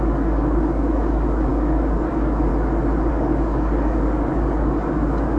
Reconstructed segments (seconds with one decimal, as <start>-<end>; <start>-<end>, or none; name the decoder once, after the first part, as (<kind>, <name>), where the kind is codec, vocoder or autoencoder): 0.0-2.5 (codec, DAC); 3.1-5.4